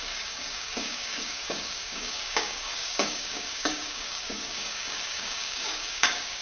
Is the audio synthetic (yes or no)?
yes